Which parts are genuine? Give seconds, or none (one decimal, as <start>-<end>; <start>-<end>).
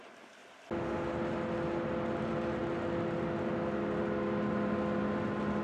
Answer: 0.0-5.6